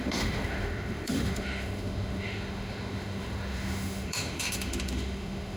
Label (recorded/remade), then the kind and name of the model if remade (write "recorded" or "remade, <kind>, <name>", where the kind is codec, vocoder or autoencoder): remade, autoencoder, DAC-VAE